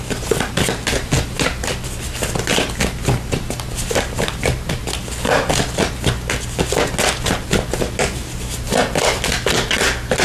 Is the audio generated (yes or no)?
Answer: no